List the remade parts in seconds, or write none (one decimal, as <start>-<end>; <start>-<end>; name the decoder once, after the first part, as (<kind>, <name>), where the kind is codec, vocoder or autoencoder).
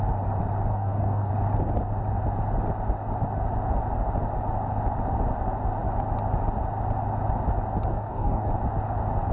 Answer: 0.7-1.3 (codec, DAC); 7.9-8.5